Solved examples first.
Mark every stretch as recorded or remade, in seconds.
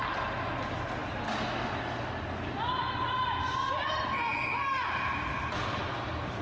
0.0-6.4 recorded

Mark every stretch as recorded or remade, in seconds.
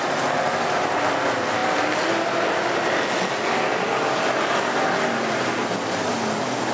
0.0-6.7 recorded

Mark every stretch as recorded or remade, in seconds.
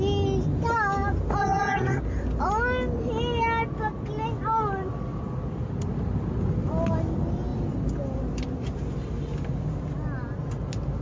0.0-1.4 recorded; 1.4-2.0 remade; 2.0-11.0 recorded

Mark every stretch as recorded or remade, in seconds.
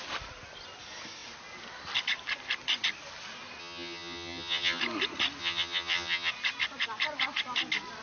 0.0-3.6 recorded; 3.6-4.8 remade; 4.8-5.4 recorded; 5.4-6.3 remade; 6.3-8.0 recorded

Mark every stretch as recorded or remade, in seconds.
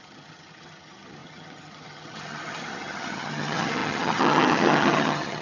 0.0-5.4 remade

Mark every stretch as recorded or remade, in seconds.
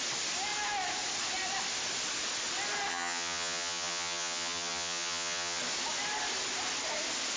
0.0-2.9 recorded; 2.9-5.6 remade; 5.6-7.4 recorded